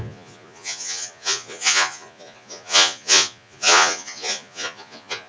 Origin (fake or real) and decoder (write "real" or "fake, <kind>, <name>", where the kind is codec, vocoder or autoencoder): fake, vocoder, Vocos